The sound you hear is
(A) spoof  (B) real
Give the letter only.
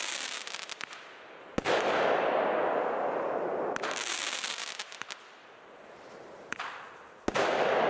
B